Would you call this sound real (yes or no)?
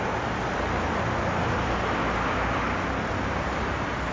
yes